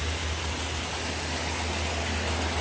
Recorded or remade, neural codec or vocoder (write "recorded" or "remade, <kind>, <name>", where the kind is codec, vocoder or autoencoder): recorded